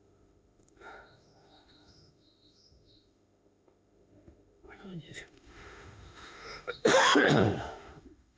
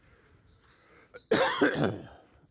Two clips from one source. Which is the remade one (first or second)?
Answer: first